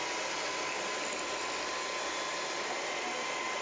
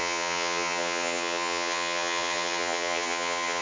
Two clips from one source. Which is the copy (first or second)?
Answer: second